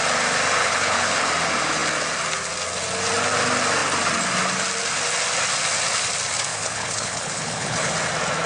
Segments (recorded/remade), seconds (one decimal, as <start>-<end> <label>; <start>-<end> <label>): 0.0-0.6 recorded; 0.6-1.3 remade; 1.3-6.5 recorded; 6.5-7.9 remade; 7.9-8.5 recorded